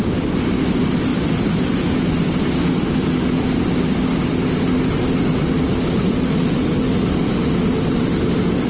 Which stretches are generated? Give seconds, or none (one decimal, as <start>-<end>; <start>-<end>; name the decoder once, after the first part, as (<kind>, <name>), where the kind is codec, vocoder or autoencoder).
none